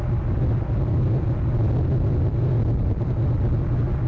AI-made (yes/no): no